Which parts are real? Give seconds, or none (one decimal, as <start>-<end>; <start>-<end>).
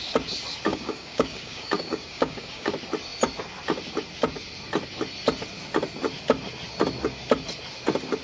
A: 0.0-0.7; 2.7-8.2